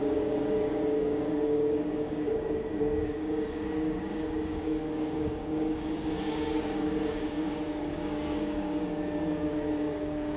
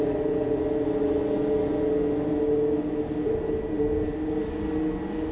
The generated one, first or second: first